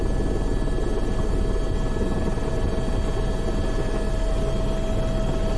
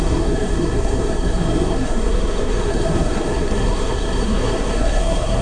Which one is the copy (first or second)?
second